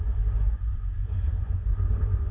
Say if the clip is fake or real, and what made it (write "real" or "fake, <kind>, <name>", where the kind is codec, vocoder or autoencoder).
fake, vocoder, Vocos